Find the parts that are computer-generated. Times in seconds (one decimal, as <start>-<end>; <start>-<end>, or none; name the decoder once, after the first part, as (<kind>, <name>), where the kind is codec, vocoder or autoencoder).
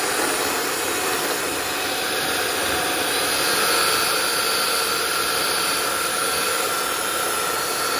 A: 6.1-6.7 (codec, DAC)